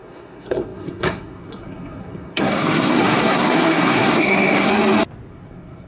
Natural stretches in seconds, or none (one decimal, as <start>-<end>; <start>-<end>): 4.7-5.3